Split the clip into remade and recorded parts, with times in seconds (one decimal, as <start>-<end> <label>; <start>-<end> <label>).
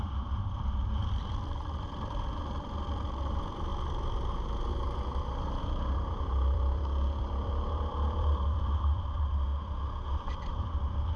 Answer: 0.0-3.7 remade; 3.7-4.3 recorded; 4.3-4.7 remade; 4.7-5.6 recorded; 5.6-9.5 remade; 9.5-10.4 recorded; 10.4-11.2 remade